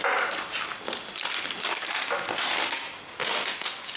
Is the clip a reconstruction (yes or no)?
no